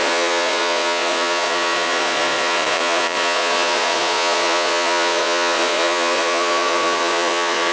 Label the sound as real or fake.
fake